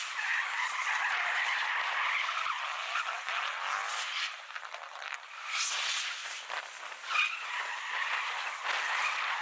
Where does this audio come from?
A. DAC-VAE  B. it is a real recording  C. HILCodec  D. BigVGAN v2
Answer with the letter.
B